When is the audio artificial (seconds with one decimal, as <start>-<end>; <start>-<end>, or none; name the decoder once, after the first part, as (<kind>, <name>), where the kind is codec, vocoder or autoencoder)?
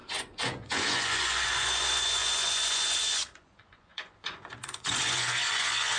0.0-6.0 (vocoder, Vocos)